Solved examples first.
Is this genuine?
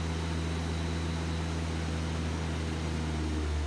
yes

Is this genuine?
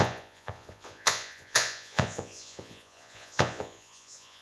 no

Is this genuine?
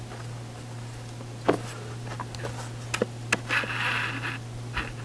yes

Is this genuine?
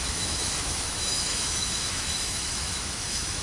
no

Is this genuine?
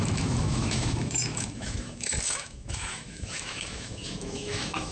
no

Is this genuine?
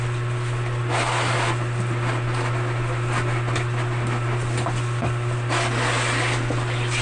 yes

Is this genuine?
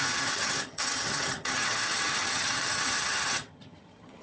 no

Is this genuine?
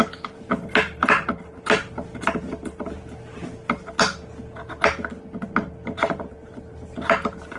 yes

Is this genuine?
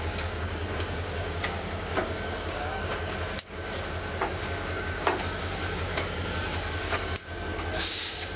no